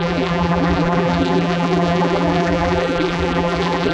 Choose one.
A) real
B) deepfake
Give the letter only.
B